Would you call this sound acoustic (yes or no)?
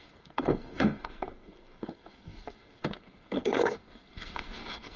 no